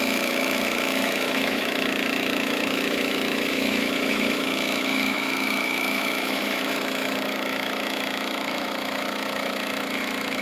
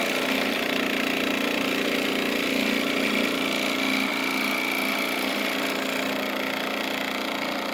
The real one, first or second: second